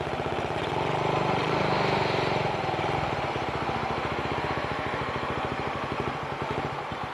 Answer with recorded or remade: recorded